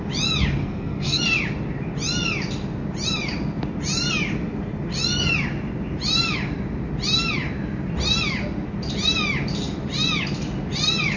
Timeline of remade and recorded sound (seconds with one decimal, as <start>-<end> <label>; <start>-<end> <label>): 0.0-0.6 recorded; 0.6-1.2 remade; 1.2-11.2 recorded